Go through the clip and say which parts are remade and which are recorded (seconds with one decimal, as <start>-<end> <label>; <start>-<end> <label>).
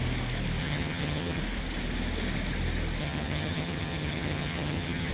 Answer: 0.0-0.6 recorded; 0.6-1.4 remade; 1.4-3.0 recorded; 3.0-5.1 remade